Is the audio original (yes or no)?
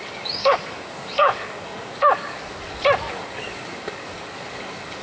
no